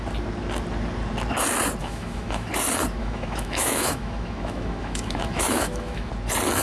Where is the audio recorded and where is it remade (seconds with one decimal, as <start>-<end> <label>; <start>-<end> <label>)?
0.0-1.8 recorded; 1.8-2.5 remade; 2.5-3.0 recorded; 3.0-6.1 remade; 6.1-6.6 recorded